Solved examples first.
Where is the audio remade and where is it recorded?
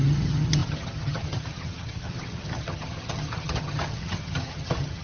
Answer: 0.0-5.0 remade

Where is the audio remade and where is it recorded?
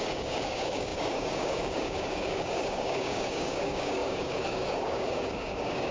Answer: 0.0-5.9 remade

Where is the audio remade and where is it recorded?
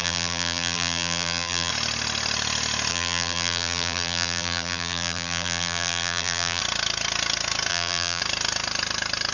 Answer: 0.0-1.7 remade; 1.7-2.9 recorded; 2.9-6.6 remade; 6.6-7.7 recorded; 7.7-8.2 remade; 8.2-9.3 recorded